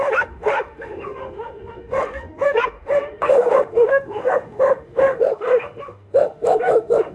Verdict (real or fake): fake